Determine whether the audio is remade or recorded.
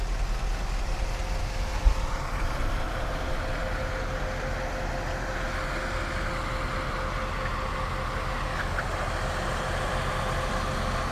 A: recorded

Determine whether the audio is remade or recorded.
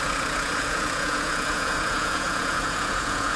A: remade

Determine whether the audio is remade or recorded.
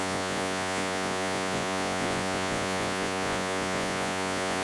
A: remade